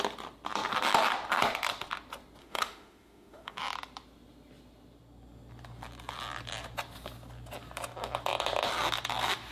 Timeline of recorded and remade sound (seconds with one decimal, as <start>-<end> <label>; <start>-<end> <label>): 0.0-2.4 recorded; 2.4-3.6 remade; 3.6-9.5 recorded